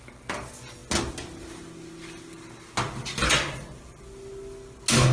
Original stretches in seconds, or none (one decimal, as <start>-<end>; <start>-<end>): 0.0-5.1